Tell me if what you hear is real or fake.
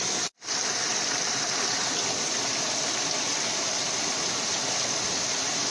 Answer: real